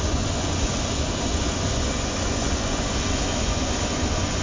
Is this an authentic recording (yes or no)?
no